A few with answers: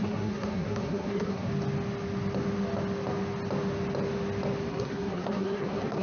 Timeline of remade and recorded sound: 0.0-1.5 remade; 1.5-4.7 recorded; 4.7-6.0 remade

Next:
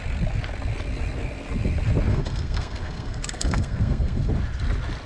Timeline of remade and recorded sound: 0.0-2.1 recorded; 2.1-4.3 remade; 4.3-5.1 recorded

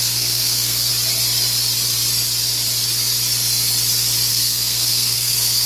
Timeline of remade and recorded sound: 0.0-0.9 remade; 0.9-4.3 recorded; 4.3-5.7 remade

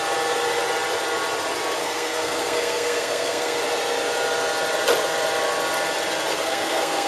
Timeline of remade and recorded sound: 0.0-1.8 recorded; 1.8-3.6 remade; 3.6-6.3 recorded; 6.3-7.1 remade

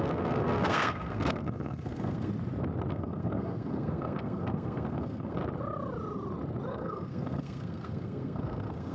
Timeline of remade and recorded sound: 0.0-2.3 remade; 2.3-2.9 recorded; 2.9-5.4 remade; 5.4-6.7 recorded; 6.7-8.9 remade